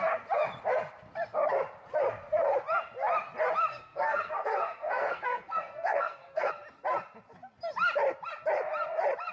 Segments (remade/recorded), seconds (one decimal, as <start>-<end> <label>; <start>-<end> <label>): 0.0-3.7 recorded; 3.7-6.5 remade; 6.5-9.3 recorded